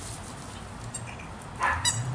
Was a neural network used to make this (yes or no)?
no